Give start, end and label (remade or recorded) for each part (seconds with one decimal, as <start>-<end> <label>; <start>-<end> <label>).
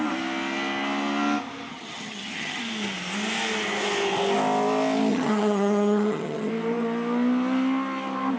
0.0-1.7 recorded; 1.7-2.6 remade; 2.6-5.1 recorded; 5.1-6.5 remade; 6.5-8.4 recorded